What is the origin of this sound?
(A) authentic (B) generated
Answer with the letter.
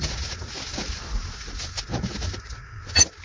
A